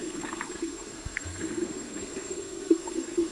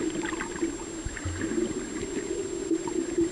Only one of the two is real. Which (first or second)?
second